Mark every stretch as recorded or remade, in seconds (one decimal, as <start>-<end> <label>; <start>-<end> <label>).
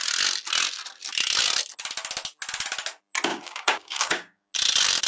0.0-3.3 recorded; 3.3-4.5 remade; 4.5-5.1 recorded